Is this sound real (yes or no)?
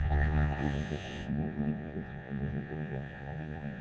no